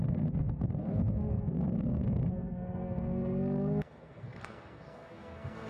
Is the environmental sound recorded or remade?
remade